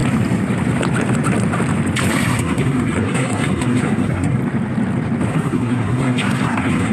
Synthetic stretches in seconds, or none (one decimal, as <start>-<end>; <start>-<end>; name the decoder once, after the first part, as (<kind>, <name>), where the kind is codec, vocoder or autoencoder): 2.1-4.4 (codec, SNAC); 5.3-6.9